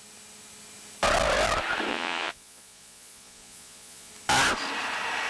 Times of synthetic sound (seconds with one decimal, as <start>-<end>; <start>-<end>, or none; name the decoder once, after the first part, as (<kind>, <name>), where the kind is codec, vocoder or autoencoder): 1.9-4.1 (vocoder, Vocos)